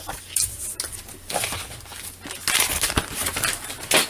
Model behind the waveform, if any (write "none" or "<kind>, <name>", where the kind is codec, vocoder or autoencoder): none